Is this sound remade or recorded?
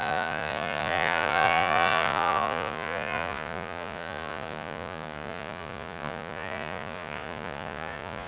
remade